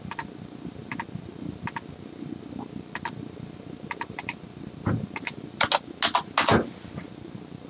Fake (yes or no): no